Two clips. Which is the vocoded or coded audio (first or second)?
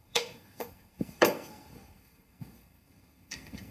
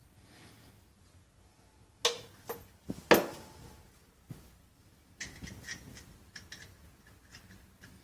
first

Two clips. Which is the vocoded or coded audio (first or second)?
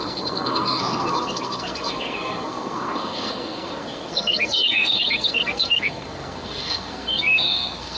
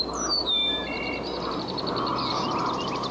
first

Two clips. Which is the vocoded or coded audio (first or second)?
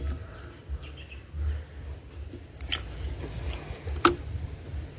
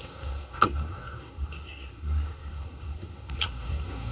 second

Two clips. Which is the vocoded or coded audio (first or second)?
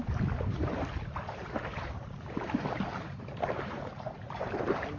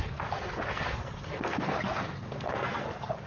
second